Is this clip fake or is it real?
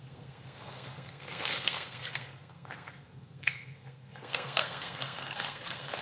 fake